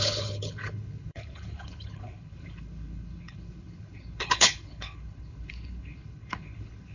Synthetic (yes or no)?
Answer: yes